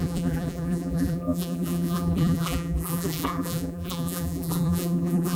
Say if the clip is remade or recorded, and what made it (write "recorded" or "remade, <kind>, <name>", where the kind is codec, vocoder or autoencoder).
remade, vocoder, BigVGAN v2